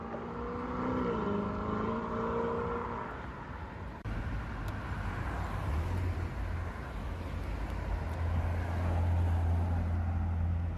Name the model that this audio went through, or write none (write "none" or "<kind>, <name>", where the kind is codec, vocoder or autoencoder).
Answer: none